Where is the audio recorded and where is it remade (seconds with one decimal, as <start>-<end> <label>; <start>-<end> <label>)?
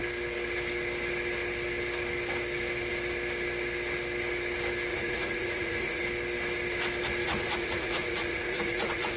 0.0-4.9 recorded; 4.9-6.0 remade; 6.0-7.2 recorded; 7.2-9.2 remade